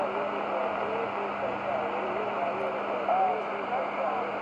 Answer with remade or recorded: recorded